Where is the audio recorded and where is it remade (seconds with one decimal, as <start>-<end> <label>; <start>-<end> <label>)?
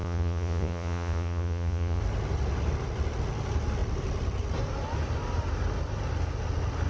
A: 0.0-2.0 remade; 2.0-6.9 recorded